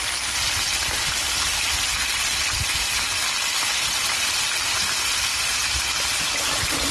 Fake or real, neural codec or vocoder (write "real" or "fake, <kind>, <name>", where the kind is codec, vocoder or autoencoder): real